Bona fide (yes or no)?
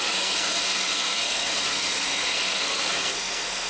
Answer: no